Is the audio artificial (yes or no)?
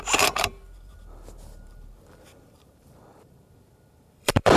yes